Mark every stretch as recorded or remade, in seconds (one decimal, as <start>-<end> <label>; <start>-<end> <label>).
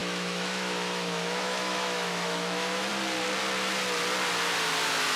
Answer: 0.0-2.9 remade; 2.9-5.2 recorded